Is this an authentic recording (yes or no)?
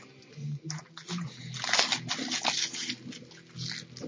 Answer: yes